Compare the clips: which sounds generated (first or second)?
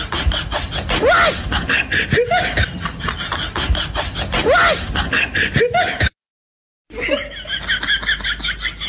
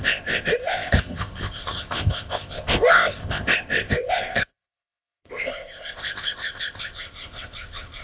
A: second